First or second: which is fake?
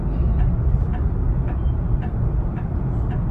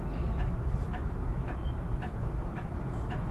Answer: second